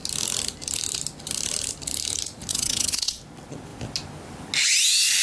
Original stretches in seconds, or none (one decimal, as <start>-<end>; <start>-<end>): 0.0-2.5; 3.2-5.2